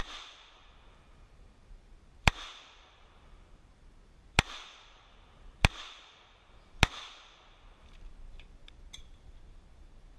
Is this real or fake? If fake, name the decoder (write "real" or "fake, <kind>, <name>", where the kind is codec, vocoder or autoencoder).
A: fake, vocoder, BigVGAN v2